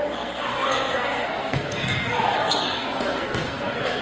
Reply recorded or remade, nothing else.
remade